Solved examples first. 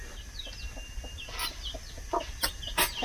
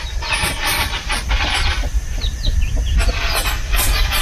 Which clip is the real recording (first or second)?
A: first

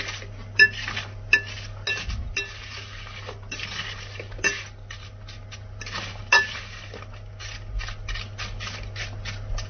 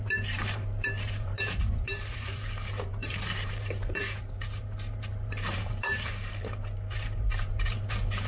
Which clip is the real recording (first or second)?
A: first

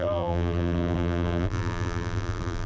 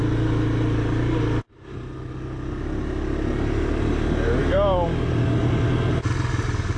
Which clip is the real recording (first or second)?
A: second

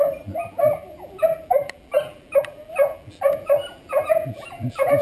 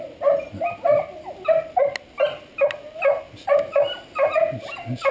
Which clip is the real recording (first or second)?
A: second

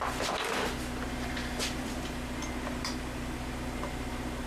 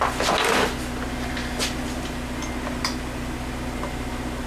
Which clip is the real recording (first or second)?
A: second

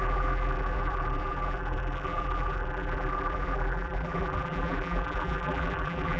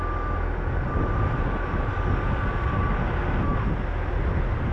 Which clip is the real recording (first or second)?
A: second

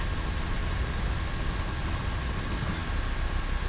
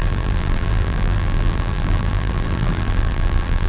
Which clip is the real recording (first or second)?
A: first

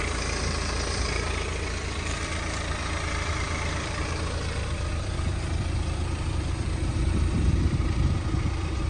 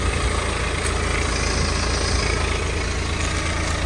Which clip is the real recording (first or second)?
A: second